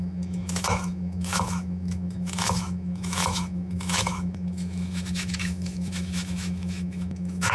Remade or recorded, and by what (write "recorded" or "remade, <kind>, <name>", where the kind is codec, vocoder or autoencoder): remade, autoencoder, DAC-VAE